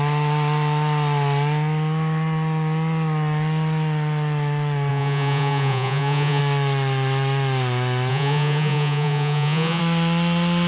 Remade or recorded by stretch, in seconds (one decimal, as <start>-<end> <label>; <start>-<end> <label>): 0.0-4.9 recorded; 4.9-6.4 remade; 6.4-8.1 recorded; 8.1-9.8 remade; 9.8-10.7 recorded